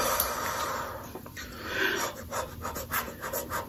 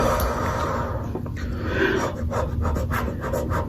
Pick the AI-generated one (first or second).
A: first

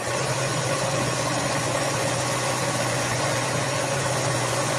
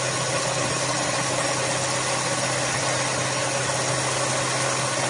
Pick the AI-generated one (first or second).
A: first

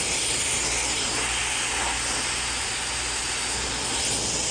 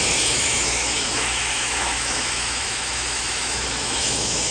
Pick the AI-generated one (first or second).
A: second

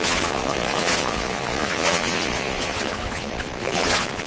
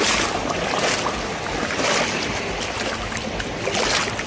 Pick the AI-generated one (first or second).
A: first